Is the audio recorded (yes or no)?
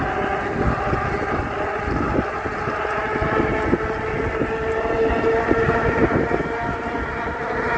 yes